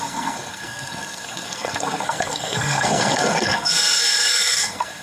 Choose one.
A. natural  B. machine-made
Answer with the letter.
B